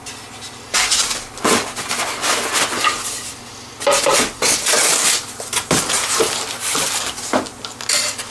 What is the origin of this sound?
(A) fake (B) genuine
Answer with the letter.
B